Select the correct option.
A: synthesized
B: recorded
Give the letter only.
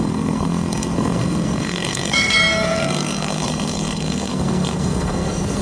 A